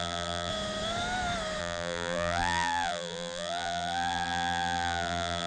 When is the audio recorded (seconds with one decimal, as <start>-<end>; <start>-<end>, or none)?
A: 0.5-1.6

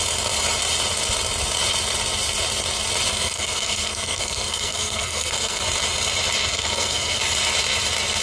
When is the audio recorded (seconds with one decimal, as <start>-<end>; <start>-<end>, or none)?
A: 0.0-3.1; 5.6-6.5; 7.2-8.2

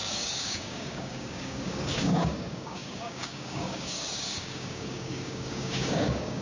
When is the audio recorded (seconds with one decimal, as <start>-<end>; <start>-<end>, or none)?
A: none

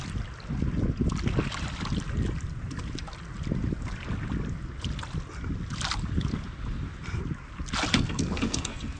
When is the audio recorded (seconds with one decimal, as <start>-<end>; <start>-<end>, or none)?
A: 0.0-7.9

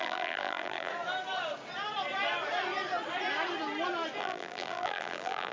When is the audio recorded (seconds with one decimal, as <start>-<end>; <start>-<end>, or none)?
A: 0.9-4.2

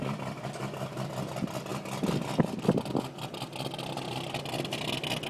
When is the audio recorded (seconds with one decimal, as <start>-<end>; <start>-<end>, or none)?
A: 0.0-5.3

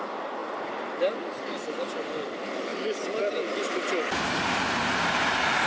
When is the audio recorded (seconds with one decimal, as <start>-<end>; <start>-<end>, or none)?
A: 0.0-5.7

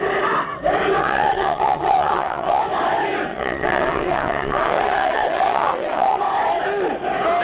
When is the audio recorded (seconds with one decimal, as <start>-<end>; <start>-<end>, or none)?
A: 0.0-1.0; 2.6-3.3; 6.2-7.4